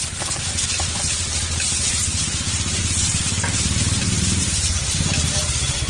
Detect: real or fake fake